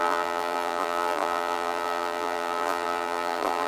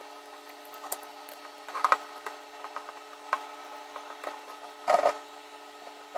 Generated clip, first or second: first